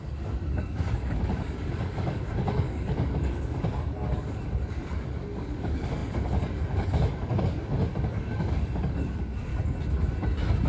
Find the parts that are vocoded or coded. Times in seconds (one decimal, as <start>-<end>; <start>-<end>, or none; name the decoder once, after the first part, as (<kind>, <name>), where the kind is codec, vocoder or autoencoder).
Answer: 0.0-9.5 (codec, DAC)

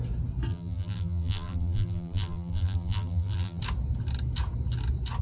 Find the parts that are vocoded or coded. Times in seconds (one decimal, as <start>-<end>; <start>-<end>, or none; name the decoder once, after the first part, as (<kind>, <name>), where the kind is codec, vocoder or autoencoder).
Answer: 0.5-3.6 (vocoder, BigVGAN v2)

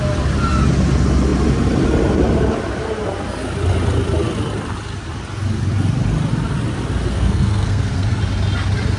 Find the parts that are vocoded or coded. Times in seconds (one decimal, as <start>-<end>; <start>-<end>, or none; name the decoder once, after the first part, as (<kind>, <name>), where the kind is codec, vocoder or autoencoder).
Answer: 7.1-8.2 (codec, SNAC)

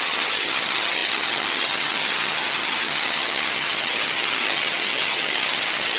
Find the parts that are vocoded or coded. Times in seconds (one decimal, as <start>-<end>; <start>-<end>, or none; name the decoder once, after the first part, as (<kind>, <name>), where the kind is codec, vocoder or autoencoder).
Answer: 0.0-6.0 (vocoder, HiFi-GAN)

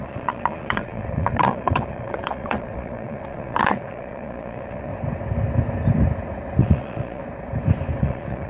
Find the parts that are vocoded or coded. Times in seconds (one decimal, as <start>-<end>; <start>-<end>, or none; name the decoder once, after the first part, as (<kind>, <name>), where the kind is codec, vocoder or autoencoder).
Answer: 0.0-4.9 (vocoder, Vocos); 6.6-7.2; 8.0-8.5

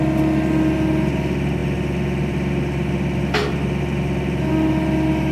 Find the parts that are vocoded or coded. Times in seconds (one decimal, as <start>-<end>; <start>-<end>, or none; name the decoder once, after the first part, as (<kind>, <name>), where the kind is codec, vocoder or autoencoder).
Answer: 1.6-2.9 (vocoder, BigVGAN v2); 3.4-4.5